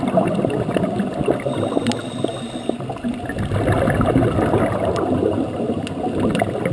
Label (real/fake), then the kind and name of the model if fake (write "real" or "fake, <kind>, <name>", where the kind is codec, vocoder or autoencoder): real